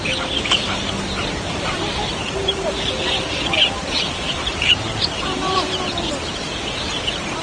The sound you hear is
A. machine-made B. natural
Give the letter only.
B